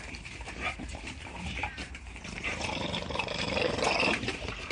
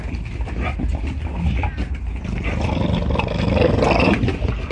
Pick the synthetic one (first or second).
first